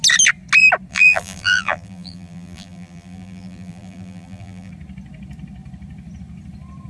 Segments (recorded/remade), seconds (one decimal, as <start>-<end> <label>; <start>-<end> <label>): 0.0-0.9 recorded; 0.9-4.7 remade; 4.7-6.9 recorded